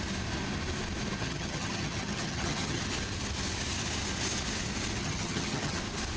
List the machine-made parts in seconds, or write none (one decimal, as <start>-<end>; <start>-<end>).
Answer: 1.2-2.8; 5.0-5.8